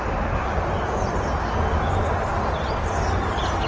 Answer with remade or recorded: recorded